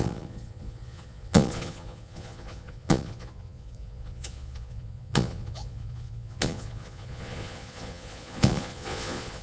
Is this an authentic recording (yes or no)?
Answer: no